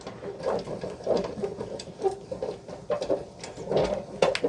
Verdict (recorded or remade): recorded